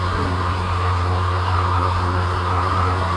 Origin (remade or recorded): remade